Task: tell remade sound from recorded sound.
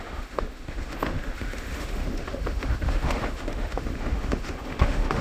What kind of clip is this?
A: remade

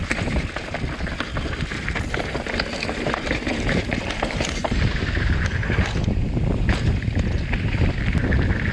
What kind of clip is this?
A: recorded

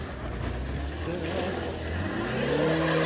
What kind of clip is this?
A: recorded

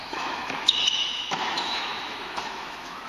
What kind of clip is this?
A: remade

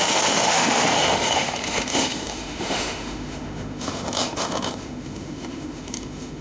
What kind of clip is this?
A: remade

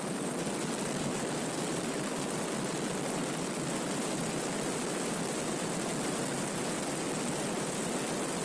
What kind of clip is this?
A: recorded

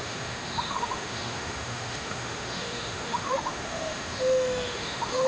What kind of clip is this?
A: remade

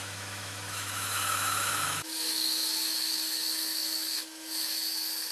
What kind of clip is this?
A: remade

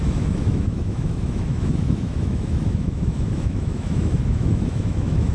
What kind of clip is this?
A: remade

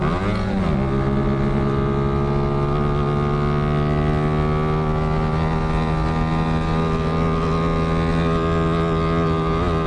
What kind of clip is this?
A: recorded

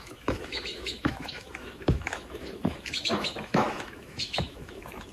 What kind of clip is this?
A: remade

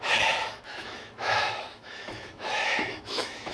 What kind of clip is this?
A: remade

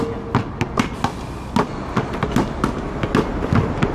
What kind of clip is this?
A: recorded